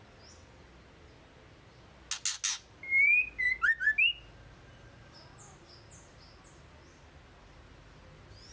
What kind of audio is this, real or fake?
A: real